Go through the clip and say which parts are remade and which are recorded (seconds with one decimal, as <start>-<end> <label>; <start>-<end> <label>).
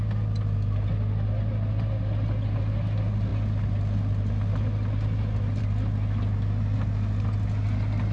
0.0-8.1 recorded